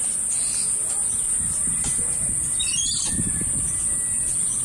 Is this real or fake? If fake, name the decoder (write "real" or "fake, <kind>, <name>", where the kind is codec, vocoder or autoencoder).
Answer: real